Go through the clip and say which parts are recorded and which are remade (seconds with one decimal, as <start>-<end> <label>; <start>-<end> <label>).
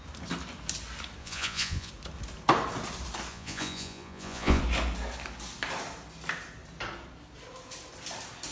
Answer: 0.0-1.2 recorded; 1.2-1.9 remade; 1.9-3.3 recorded; 3.3-4.6 remade; 4.6-8.5 recorded